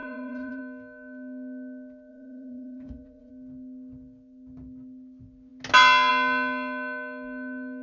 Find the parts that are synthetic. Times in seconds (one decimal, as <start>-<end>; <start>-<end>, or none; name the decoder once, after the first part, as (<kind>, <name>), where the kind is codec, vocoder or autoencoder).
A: 0.0-0.6 (vocoder, Vocos); 2.1-3.3